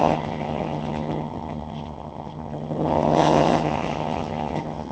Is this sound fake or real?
fake